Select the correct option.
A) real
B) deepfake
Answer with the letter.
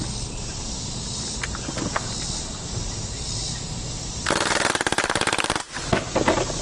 A